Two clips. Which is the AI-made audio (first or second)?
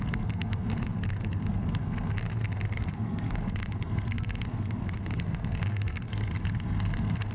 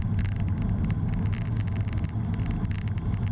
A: first